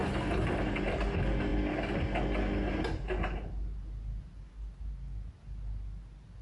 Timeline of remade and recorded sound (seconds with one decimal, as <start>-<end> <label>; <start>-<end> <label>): 0.0-1.0 remade; 1.0-6.4 recorded